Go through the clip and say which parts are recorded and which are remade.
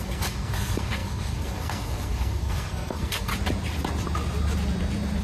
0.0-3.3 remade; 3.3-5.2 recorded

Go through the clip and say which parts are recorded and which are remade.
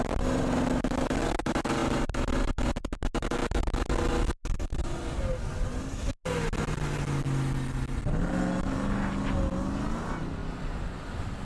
0.0-11.4 recorded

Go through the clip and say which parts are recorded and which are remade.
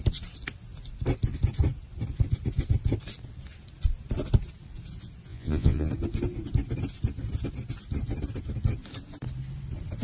0.0-5.3 recorded; 5.3-5.9 remade; 5.9-10.0 recorded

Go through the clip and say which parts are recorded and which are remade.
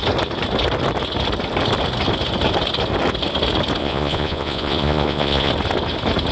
0.0-3.8 recorded; 3.8-5.5 remade; 5.5-6.3 recorded